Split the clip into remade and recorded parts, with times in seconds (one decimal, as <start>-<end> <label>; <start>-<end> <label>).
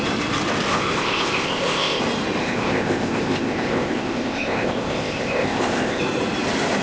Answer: 0.0-0.7 recorded; 0.7-2.0 remade; 2.0-2.4 recorded; 2.4-6.0 remade; 6.0-6.8 recorded